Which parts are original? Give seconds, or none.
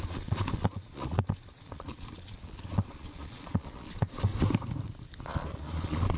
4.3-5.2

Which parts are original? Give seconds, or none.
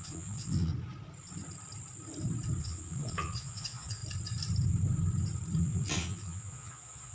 0.7-2.6; 4.0-5.6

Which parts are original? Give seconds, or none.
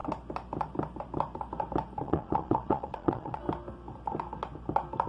0.0-2.0; 3.4-5.1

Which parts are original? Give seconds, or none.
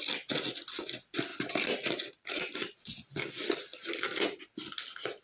0.0-5.2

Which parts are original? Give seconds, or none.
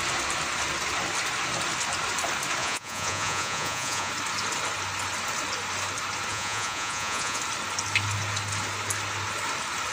0.0-2.6; 4.1-6.3; 7.4-9.9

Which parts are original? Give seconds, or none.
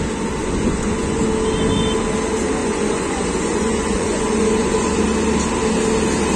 0.0-0.4; 1.2-2.6; 5.0-6.4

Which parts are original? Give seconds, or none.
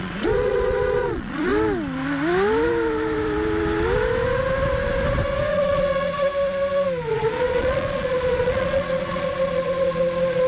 1.5-5.5; 6.3-7.1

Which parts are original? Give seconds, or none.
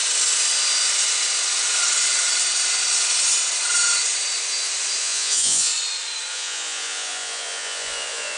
0.0-5.0; 5.7-6.3